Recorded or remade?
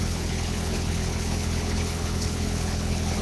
remade